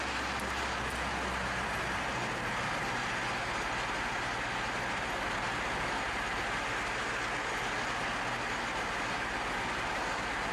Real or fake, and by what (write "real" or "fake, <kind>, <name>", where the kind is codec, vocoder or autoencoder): real